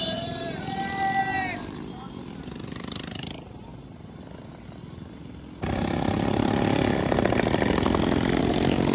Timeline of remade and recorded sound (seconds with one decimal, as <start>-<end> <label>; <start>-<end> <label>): 0.0-0.6 remade; 0.6-1.2 recorded; 1.2-3.7 remade; 3.7-8.4 recorded; 8.4-8.9 remade